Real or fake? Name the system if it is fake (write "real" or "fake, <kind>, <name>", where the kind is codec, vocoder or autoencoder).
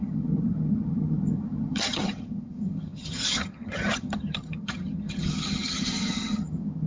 fake, vocoder, HiFi-GAN